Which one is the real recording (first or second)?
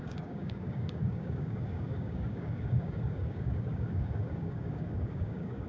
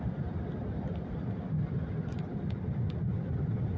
second